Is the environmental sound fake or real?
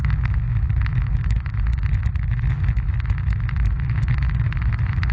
fake